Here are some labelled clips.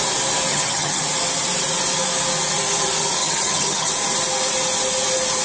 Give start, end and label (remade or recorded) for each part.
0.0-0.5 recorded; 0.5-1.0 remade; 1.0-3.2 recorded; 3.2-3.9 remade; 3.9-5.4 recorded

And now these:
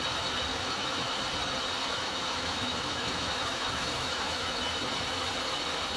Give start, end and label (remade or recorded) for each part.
0.0-0.5 recorded; 0.5-1.2 remade; 1.2-1.9 recorded; 1.9-4.6 remade; 4.6-6.0 recorded

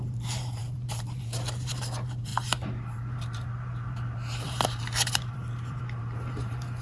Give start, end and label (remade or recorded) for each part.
0.0-6.8 remade

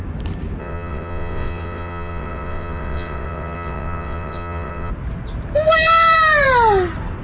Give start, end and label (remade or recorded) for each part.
0.0-0.6 recorded; 0.6-4.9 remade; 4.9-7.2 recorded

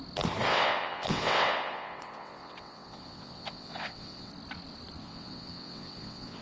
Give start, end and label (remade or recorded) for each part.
0.0-0.5 recorded; 0.5-4.3 remade; 4.3-5.0 recorded; 5.0-6.4 remade

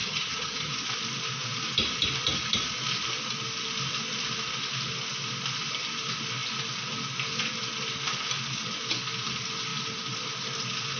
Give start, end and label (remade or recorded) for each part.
0.0-0.7 remade; 0.7-11.0 recorded

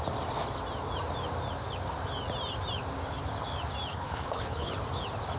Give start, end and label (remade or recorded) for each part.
0.0-3.9 recorded; 3.9-4.7 remade; 4.7-5.4 recorded